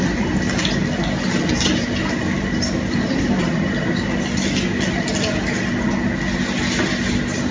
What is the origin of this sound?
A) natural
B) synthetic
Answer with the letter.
A